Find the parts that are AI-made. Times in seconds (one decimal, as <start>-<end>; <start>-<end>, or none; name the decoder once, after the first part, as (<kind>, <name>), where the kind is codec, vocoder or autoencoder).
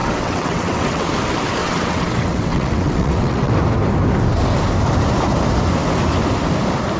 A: 0.0-1.1 (vocoder, WaveNeXt); 1.6-3.5